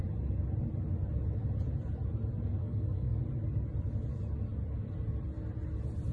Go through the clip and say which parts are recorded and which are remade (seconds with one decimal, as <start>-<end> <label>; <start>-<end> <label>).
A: 0.0-2.6 recorded; 2.6-3.2 remade; 3.2-6.1 recorded